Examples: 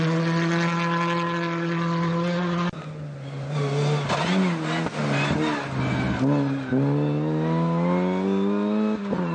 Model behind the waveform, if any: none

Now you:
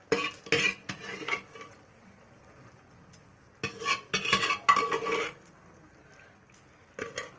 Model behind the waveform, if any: none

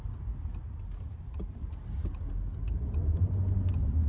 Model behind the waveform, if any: none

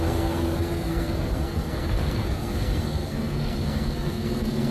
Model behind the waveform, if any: codec, SNAC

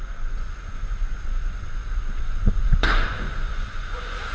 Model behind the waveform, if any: vocoder, Vocos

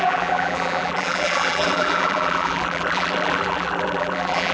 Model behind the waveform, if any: vocoder, BigVGAN v2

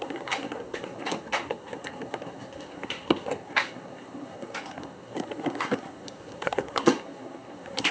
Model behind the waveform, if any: codec, SNAC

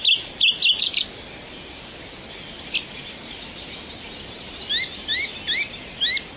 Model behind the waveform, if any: none